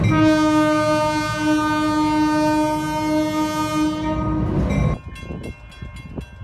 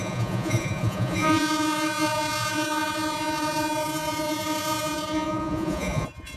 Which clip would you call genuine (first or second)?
first